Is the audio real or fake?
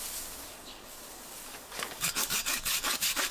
fake